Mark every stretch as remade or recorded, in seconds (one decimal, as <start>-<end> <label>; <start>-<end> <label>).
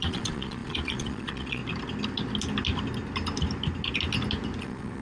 0.0-1.6 remade; 1.6-4.6 recorded; 4.6-5.0 remade